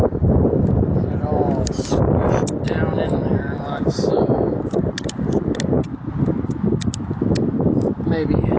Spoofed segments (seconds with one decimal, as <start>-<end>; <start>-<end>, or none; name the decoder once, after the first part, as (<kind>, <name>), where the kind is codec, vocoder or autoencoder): none